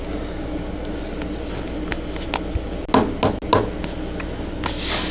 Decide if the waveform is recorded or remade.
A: recorded